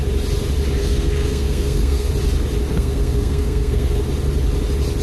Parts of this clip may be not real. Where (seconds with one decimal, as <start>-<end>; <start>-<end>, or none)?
0.8-2.1; 2.7-4.0